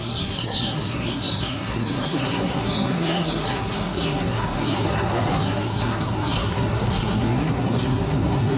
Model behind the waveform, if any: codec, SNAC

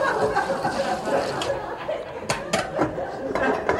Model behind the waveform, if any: none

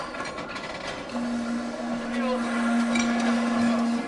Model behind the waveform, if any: none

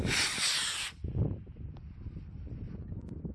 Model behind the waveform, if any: none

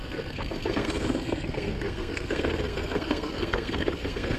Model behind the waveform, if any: codec, SNAC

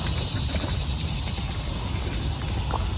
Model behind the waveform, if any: none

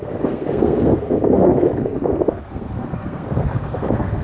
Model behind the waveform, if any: codec, SNAC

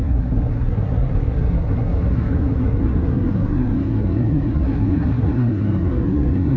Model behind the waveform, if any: codec, SNAC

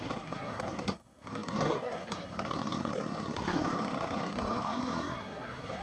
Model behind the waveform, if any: codec, SNAC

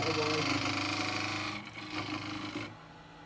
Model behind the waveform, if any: none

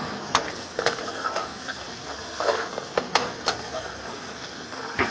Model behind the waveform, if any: codec, SNAC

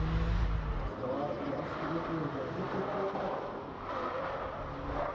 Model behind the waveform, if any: none